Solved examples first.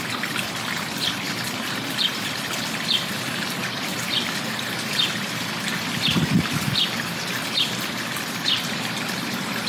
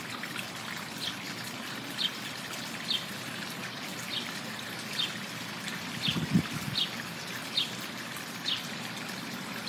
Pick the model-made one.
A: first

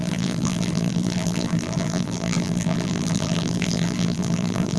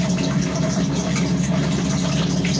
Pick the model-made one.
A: first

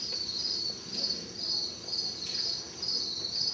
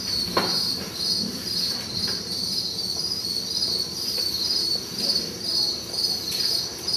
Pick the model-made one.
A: second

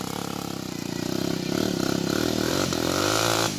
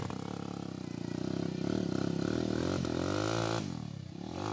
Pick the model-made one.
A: first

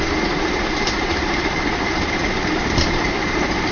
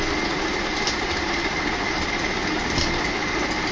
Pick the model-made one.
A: first